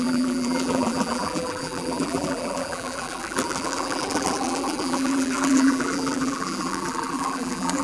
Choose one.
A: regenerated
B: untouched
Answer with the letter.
A